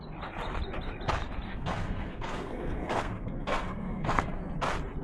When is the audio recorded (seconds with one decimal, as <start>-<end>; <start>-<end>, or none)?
0.0-1.5; 4.5-5.0